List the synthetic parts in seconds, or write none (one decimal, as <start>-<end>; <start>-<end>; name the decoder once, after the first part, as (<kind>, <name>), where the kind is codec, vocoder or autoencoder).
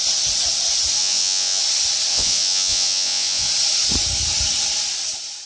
1.0-1.6 (vocoder, Vocos); 2.1-3.5